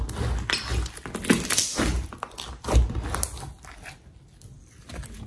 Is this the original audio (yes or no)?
yes